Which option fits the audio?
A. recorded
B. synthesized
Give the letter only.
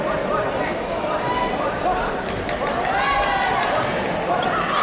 A